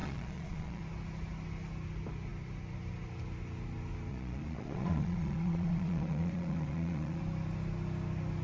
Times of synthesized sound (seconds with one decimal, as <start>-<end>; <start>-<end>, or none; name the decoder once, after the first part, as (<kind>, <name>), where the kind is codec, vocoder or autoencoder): 0.0-0.8 (vocoder, Vocos); 4.1-7.2